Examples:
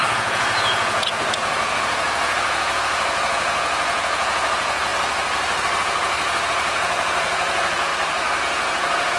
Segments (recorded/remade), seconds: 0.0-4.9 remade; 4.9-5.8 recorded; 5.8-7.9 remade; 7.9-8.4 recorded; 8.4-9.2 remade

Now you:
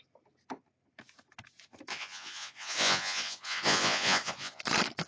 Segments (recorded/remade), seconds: 0.0-1.9 recorded; 1.9-4.6 remade; 4.6-5.1 recorded